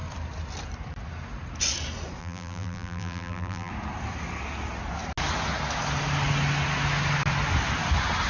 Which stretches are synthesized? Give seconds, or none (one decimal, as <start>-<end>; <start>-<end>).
2.2-3.7